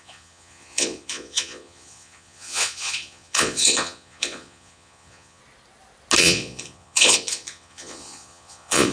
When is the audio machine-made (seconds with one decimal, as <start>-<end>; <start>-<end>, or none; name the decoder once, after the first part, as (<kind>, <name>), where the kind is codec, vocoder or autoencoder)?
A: 0.0-5.4 (vocoder, Vocos); 6.2-8.9